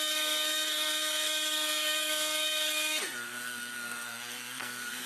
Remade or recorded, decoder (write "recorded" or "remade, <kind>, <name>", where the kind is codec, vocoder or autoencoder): remade, codec, SNAC